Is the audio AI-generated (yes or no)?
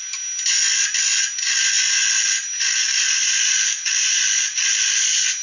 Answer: no